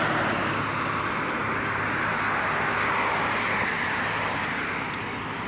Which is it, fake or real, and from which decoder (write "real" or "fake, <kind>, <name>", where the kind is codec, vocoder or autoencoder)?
real